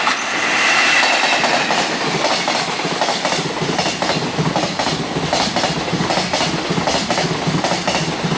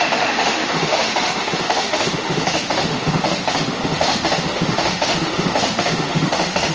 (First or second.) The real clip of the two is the first